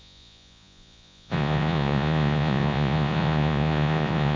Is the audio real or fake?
fake